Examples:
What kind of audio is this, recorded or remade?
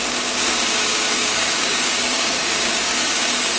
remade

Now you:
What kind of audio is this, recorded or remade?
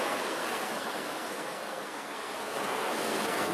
remade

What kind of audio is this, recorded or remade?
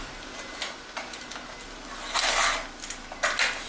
recorded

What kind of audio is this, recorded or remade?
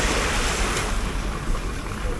recorded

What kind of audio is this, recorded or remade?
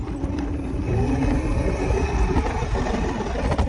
recorded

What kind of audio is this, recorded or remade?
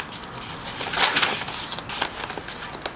recorded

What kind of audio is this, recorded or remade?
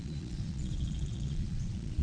remade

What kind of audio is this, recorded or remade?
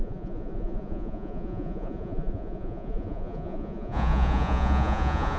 remade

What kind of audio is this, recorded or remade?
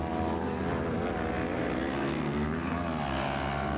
recorded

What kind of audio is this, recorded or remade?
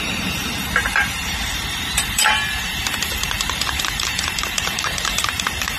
remade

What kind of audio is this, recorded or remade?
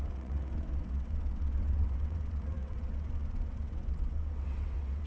remade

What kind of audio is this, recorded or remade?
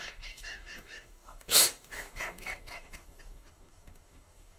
remade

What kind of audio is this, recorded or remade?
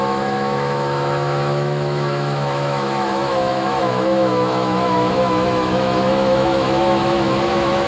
remade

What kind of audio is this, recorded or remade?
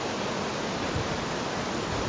recorded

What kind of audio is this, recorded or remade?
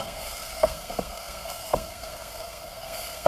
remade